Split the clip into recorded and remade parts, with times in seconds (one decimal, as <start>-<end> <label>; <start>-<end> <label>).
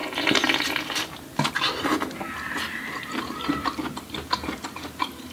0.0-1.5 recorded; 1.5-1.9 remade; 1.9-2.6 recorded; 2.6-5.3 remade